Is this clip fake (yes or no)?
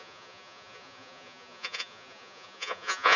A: yes